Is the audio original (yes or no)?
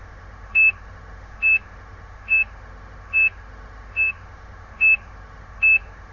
no